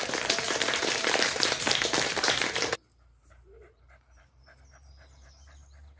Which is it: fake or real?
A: fake